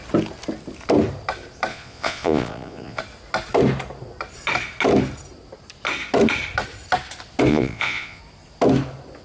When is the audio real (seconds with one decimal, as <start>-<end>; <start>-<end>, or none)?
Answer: 0.0-1.7; 3.0-7.5; 8.2-9.2